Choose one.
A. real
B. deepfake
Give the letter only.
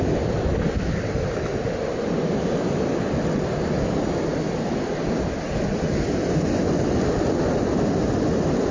A